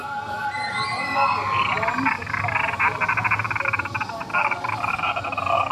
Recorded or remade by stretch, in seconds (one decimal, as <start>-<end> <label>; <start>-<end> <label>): 0.0-4.3 recorded; 4.3-5.0 remade; 5.0-5.7 recorded